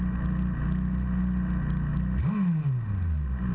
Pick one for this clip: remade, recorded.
recorded